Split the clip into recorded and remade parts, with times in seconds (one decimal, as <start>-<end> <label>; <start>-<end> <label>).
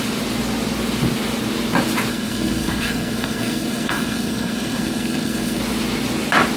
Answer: 0.0-2.1 recorded; 2.1-5.6 remade; 5.6-6.6 recorded